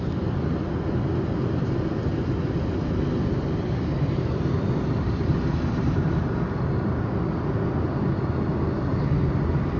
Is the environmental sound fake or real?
real